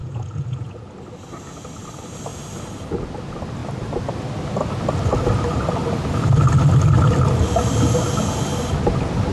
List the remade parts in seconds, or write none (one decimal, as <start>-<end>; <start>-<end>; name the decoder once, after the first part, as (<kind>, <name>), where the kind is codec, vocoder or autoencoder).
0.0-0.9 (vocoder, Vocos)